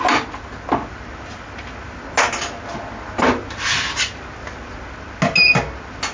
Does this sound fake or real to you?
real